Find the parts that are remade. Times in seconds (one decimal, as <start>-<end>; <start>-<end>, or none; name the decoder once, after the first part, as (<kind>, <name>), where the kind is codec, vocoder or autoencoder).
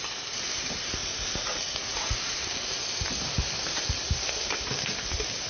none